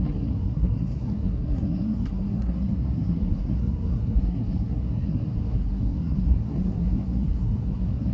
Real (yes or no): no